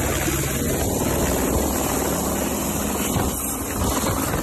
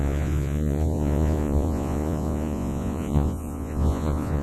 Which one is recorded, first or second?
first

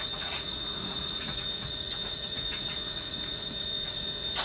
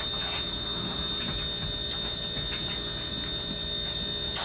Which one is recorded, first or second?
second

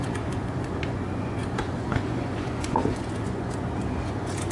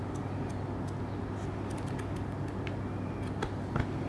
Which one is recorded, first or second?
second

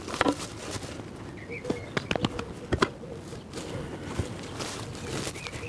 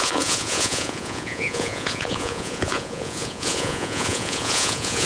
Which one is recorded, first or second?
first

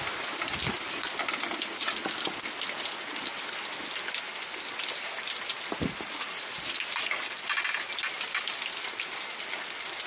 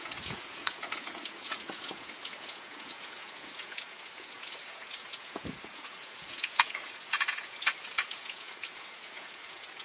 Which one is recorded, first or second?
first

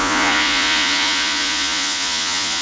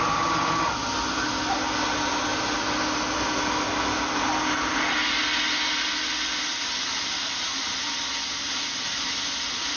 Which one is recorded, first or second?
second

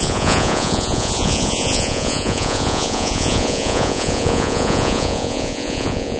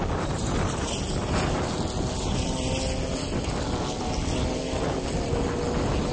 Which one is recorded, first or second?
second